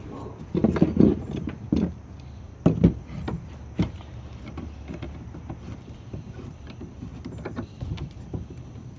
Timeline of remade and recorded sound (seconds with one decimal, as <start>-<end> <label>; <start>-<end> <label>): 0.0-9.0 recorded